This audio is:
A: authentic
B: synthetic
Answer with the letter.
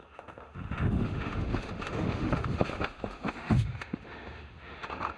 B